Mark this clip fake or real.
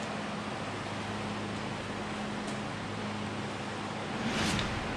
real